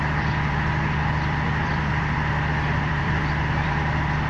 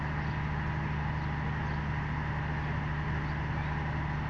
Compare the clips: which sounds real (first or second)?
second